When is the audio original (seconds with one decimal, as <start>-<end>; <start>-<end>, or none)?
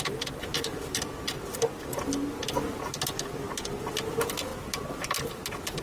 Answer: 0.0-5.8